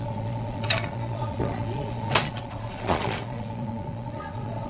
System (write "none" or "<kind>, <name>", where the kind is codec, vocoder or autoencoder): vocoder, Vocos